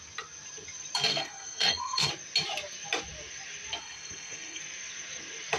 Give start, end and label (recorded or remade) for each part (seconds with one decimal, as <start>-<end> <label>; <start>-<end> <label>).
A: 0.0-1.1 recorded; 1.1-2.1 remade; 2.1-3.8 recorded; 3.8-4.6 remade; 4.6-5.6 recorded